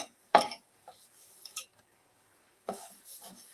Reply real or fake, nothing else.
fake